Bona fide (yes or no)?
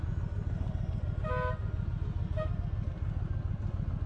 yes